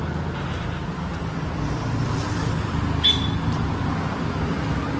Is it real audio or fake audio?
real